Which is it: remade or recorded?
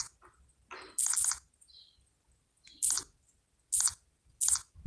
recorded